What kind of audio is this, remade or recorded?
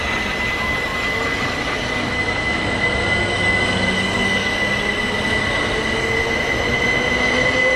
recorded